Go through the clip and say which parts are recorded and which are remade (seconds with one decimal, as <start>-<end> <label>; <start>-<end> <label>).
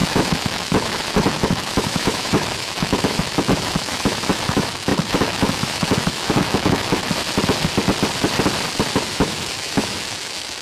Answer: 0.0-7.0 remade; 7.0-9.1 recorded; 9.1-10.6 remade